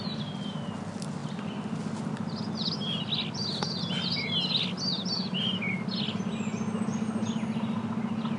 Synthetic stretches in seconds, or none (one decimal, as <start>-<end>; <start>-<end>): none